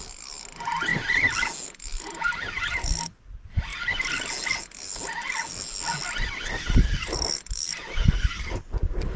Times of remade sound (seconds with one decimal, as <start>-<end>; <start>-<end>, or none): none